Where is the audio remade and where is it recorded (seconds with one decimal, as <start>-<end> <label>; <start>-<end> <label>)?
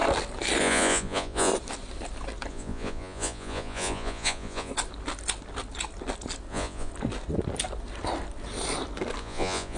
0.0-0.6 recorded; 0.6-1.5 remade; 1.5-2.5 recorded; 2.5-4.7 remade; 4.7-6.5 recorded; 6.5-6.9 remade; 6.9-9.2 recorded; 9.2-9.8 remade